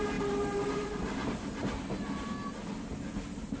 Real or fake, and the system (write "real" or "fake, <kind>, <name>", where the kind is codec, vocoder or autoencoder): real